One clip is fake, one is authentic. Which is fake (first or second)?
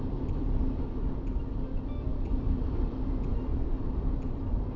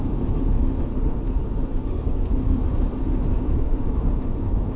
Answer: second